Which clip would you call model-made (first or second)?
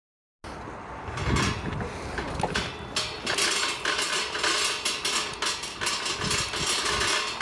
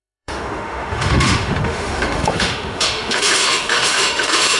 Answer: second